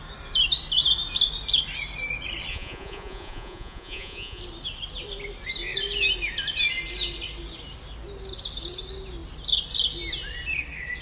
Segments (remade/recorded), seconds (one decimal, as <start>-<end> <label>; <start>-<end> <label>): 0.0-2.5 recorded; 2.5-4.4 remade; 4.4-11.0 recorded